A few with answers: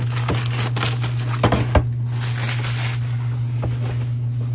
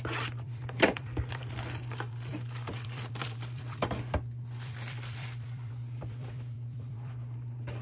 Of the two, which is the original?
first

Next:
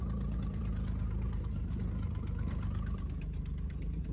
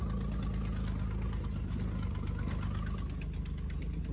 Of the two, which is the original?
second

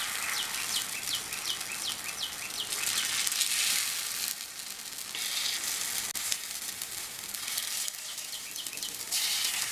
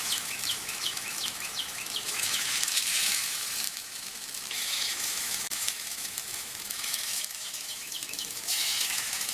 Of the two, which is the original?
first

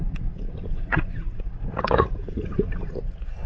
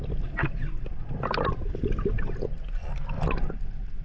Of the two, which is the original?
second